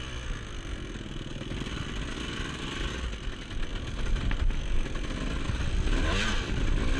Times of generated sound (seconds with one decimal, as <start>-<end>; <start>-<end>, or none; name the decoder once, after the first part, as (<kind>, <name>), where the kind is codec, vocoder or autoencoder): none